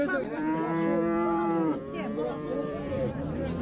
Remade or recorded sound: remade